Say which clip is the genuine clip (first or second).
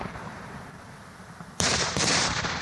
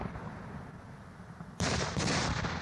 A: second